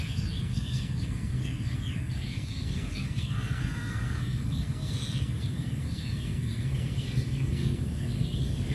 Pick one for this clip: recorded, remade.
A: remade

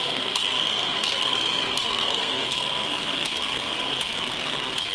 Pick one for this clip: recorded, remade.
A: remade